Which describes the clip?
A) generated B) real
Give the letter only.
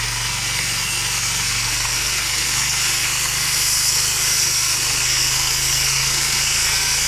A